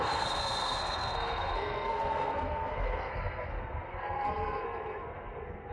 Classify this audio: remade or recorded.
remade